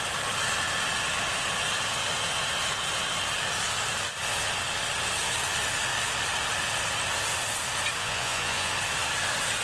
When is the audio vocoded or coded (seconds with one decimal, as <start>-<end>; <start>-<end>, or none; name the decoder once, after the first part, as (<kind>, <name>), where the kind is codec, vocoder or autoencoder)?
8.0-8.7 (vocoder, Vocos)